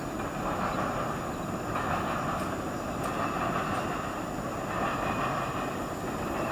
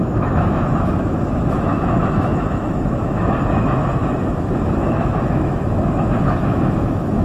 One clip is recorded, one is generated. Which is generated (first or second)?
second